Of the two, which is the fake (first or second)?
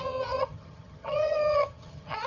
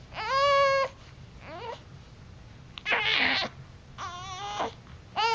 first